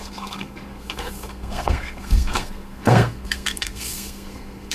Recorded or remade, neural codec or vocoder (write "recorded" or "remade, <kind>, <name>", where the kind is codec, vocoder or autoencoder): remade, codec, SNAC